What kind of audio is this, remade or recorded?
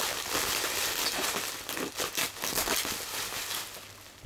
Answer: recorded